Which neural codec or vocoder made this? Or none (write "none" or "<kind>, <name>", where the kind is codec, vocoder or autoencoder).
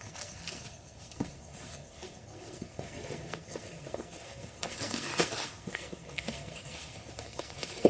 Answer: codec, SNAC